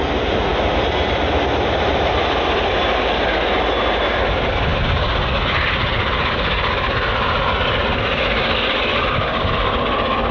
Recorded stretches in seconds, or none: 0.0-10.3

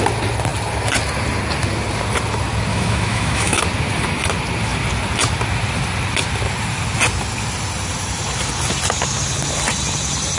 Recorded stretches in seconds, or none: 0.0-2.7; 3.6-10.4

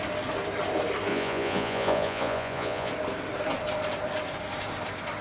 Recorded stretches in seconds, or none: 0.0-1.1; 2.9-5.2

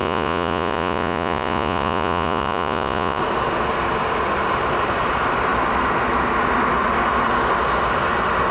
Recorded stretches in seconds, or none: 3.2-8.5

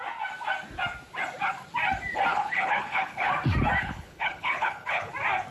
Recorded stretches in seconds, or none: 0.0-2.3; 3.3-3.8; 5.1-5.5